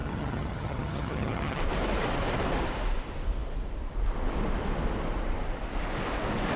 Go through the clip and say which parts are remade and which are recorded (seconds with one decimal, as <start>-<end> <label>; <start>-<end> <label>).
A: 0.0-1.6 remade; 1.6-6.6 recorded